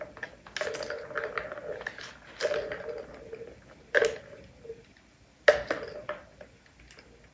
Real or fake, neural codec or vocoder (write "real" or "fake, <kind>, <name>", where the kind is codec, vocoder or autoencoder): real